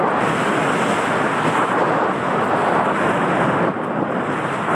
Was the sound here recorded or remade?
recorded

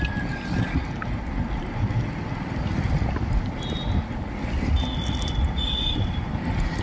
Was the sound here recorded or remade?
recorded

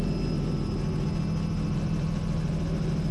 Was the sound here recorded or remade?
recorded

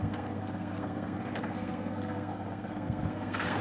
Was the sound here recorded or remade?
remade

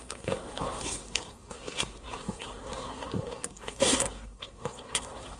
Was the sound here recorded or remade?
remade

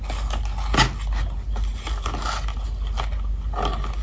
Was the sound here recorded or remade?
recorded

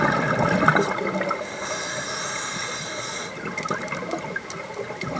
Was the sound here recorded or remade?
recorded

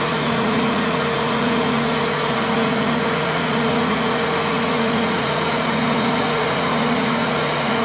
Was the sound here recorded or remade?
remade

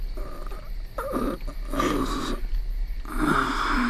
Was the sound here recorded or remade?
recorded